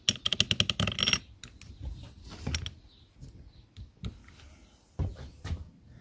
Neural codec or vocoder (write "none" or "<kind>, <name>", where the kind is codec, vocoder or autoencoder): none